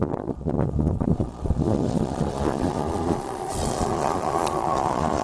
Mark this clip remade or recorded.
remade